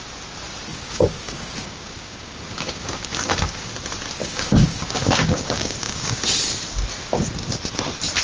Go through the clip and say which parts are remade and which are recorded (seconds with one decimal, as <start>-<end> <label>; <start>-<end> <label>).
0.0-0.7 recorded; 0.7-3.7 remade; 3.7-4.2 recorded; 4.2-6.2 remade; 6.2-8.2 recorded